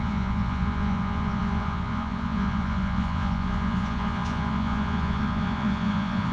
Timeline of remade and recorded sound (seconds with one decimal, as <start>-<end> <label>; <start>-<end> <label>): 0.0-6.3 remade